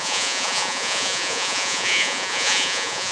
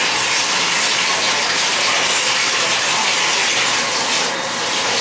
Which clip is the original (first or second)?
second